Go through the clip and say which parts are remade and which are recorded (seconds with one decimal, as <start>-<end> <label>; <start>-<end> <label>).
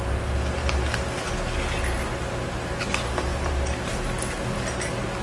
0.0-3.3 recorded; 3.3-3.9 remade; 3.9-5.2 recorded